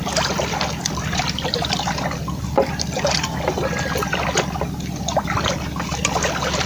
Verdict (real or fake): real